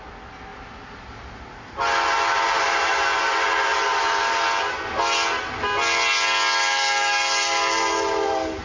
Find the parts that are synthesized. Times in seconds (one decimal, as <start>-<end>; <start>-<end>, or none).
none